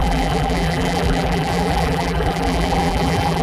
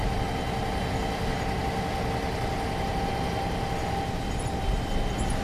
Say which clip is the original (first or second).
second